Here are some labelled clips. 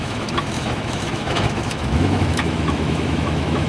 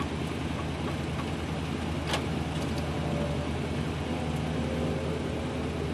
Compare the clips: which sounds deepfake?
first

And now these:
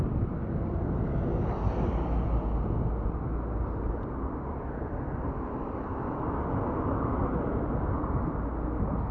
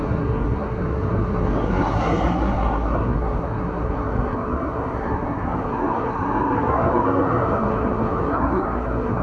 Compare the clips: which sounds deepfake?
second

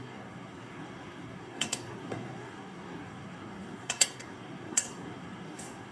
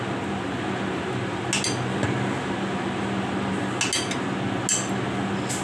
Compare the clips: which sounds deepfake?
first